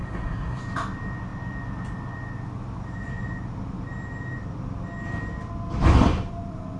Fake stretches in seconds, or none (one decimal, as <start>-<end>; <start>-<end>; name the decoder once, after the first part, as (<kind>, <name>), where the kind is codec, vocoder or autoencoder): 0.0-0.6 (codec, SNAC)